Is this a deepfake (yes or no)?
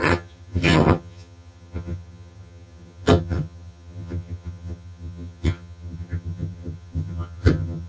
yes